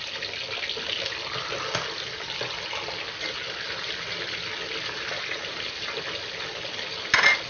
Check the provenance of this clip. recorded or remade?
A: recorded